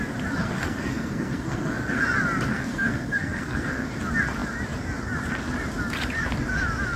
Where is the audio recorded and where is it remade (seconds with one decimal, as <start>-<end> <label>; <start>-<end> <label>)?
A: 0.0-0.4 recorded; 0.4-2.0 remade; 2.0-2.5 recorded; 2.5-3.9 remade; 3.9-7.0 recorded